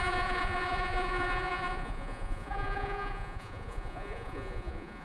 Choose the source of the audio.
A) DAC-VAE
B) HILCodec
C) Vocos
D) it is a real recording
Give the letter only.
C